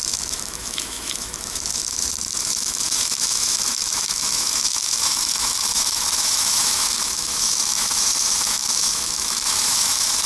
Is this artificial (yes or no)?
yes